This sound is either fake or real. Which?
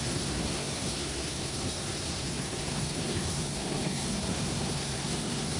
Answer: fake